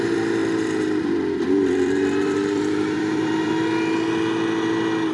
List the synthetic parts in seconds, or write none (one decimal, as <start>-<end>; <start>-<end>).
0.4-3.5